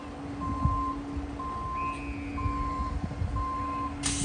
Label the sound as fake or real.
real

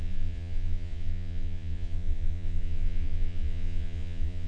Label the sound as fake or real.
fake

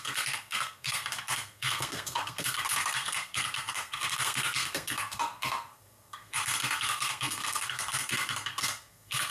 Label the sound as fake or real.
fake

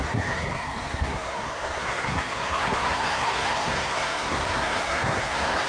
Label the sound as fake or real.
fake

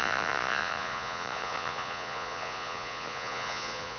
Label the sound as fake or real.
fake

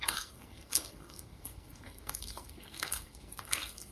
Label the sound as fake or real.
fake